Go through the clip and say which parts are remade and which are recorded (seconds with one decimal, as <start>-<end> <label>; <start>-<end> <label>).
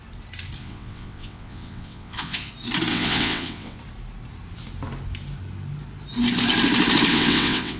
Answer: 0.0-0.6 recorded; 0.6-2.5 remade; 2.5-2.9 recorded; 2.9-3.8 remade; 3.8-7.1 recorded; 7.1-7.8 remade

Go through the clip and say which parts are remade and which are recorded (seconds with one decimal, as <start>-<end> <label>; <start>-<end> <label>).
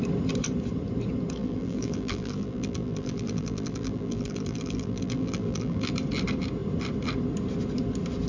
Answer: 0.0-1.4 recorded; 1.4-5.9 remade; 5.9-8.3 recorded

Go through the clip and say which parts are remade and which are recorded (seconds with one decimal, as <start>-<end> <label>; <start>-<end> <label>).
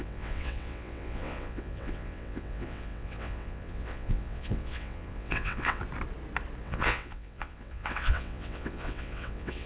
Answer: 0.0-5.8 remade; 5.8-6.6 recorded; 6.6-9.7 remade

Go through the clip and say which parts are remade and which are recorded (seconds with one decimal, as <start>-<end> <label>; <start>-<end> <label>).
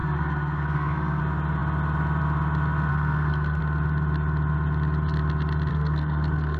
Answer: 0.0-1.2 remade; 1.2-2.9 recorded; 2.9-3.6 remade; 3.6-5.7 recorded; 5.7-6.6 remade